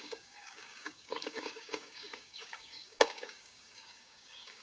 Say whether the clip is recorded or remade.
remade